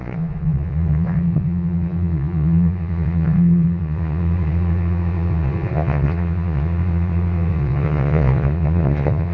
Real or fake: fake